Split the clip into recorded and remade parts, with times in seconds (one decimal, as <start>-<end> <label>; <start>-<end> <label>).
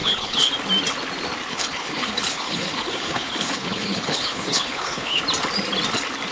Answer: 0.0-0.5 remade; 0.5-1.5 recorded; 1.5-5.2 remade; 5.2-6.3 recorded